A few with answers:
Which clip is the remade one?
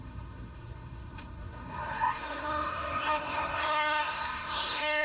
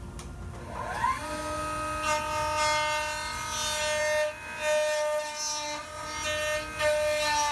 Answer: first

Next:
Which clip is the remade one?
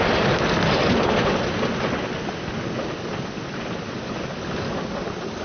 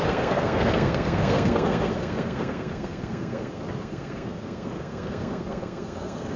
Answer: second